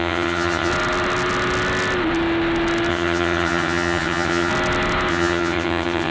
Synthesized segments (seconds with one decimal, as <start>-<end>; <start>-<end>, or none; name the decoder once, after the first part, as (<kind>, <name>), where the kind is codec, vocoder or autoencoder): 0.0-0.7 (vocoder, HiFi-GAN); 2.9-4.5; 5.1-6.1

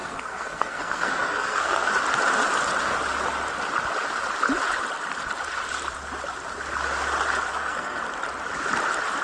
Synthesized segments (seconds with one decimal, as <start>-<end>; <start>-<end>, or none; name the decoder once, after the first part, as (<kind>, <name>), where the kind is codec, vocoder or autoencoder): 0.0-1.9 (codec, SNAC); 7.5-8.0

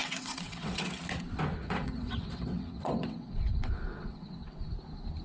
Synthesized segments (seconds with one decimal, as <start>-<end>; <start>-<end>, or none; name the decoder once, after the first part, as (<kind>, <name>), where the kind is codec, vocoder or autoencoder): 0.0-1.0 (vocoder, WaveNeXt); 1.6-4.7

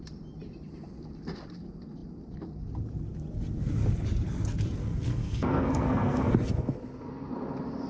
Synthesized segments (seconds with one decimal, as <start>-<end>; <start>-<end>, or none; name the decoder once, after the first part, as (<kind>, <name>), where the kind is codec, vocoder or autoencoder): 4.8-6.3 (codec, SNAC)

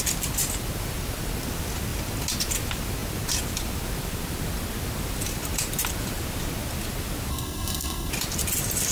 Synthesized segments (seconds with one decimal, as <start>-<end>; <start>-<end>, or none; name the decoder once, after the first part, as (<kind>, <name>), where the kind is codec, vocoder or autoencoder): 7.3-8.1 (codec, SNAC)